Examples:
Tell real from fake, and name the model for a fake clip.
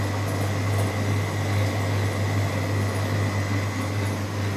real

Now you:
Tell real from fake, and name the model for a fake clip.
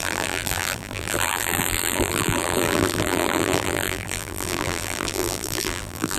fake, vocoder, BigVGAN v2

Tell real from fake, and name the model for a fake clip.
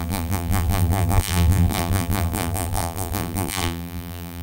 fake, vocoder, BigVGAN v2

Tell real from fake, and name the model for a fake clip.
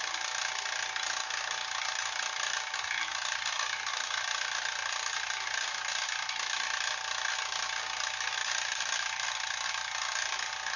fake, vocoder, BigVGAN v2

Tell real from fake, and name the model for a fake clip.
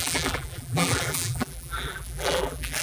fake, vocoder, BigVGAN v2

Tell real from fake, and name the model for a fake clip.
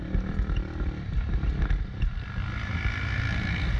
real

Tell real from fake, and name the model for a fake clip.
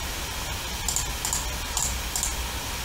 real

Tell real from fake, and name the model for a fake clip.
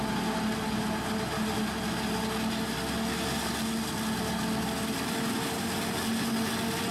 real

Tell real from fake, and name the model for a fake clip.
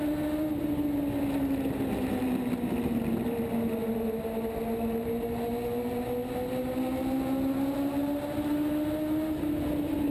real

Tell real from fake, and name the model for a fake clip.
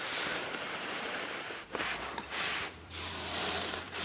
fake, vocoder, BigVGAN v2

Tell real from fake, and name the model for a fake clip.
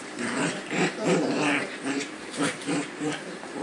fake, vocoder, BigVGAN v2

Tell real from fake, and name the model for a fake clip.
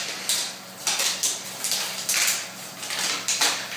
fake, vocoder, BigVGAN v2